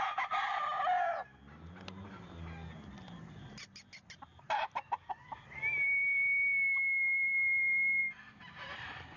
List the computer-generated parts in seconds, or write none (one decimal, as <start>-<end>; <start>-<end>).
none